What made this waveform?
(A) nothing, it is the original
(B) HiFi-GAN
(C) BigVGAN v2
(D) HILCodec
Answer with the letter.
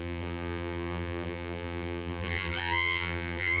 C